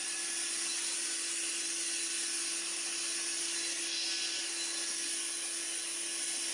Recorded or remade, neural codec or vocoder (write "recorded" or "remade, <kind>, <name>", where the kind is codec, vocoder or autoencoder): recorded